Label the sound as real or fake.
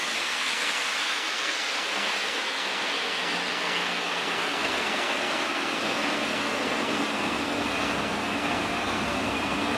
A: fake